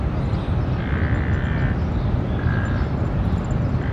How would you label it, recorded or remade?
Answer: recorded